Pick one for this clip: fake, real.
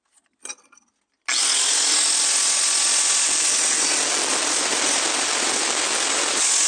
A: real